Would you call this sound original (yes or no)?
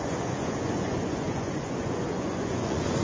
no